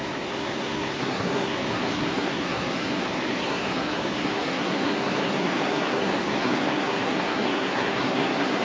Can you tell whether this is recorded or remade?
remade